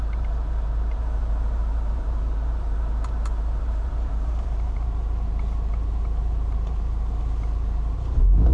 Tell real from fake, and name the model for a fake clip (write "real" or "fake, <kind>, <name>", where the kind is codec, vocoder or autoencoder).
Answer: fake, vocoder, BigVGAN v2